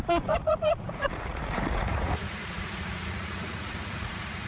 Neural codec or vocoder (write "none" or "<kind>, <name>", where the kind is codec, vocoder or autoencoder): vocoder, Vocos